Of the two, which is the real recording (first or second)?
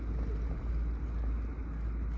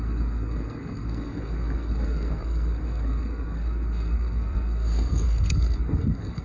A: first